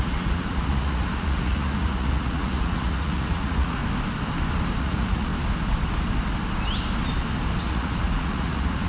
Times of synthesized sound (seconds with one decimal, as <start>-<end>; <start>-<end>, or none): 0.0-3.8; 4.8-5.3; 7.6-8.9